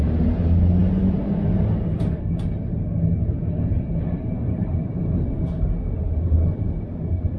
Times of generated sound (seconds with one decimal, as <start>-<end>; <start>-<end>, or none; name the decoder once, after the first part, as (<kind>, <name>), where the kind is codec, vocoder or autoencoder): none